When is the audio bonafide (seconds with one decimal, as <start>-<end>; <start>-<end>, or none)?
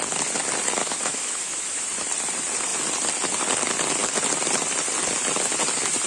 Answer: 0.0-0.8; 1.8-6.1